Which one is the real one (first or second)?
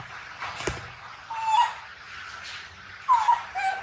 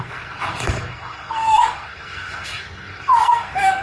first